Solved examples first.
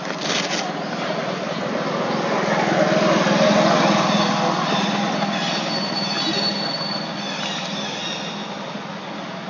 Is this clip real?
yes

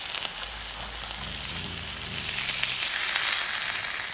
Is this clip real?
yes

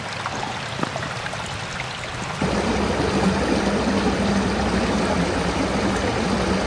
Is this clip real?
yes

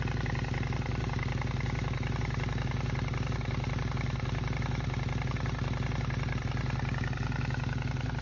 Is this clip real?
yes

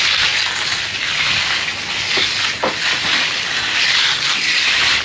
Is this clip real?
yes